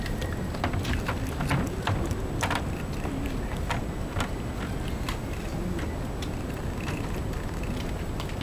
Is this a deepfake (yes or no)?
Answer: no